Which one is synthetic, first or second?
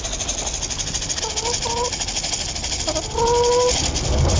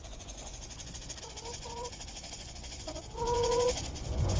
second